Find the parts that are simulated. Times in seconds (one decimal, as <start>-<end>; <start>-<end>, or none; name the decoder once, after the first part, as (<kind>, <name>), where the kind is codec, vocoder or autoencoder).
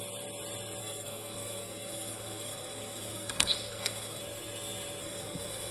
0.8-4.2 (codec, SNAC); 5.0-5.7